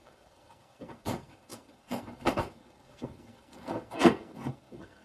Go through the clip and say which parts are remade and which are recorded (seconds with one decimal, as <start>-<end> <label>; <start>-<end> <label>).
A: 0.0-5.0 remade